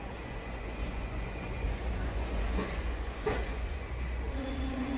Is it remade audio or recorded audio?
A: remade